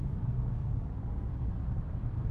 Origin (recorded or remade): remade